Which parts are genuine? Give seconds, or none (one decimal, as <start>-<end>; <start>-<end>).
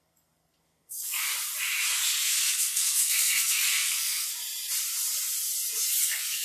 1.3-2.2; 4.3-6.0